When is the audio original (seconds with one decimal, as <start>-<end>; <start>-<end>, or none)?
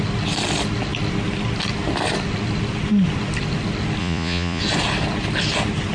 0.0-4.0; 4.6-5.9